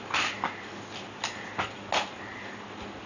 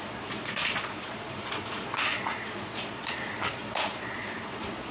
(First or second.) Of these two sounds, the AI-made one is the second